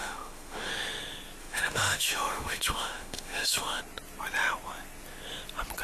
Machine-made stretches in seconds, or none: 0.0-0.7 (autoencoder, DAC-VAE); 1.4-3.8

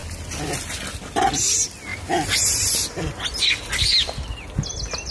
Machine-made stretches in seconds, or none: none

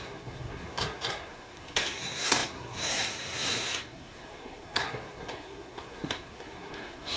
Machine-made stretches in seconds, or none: 0.0-7.2 (codec, SNAC)

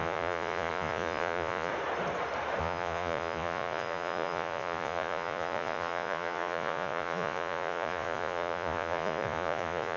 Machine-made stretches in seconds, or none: 0.0-1.7 (vocoder, Vocos); 2.6-10.0